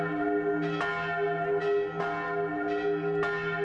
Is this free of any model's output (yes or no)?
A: yes